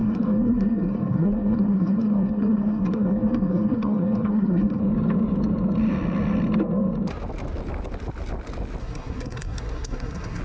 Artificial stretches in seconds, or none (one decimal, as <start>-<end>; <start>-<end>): 0.0-4.8; 8.8-10.4